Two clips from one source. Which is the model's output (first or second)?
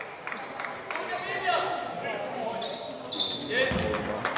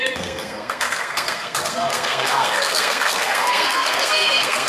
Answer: second